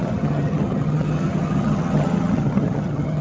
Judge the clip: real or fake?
fake